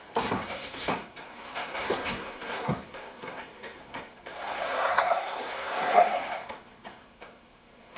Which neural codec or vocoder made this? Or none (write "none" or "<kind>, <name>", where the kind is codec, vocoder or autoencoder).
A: codec, SNAC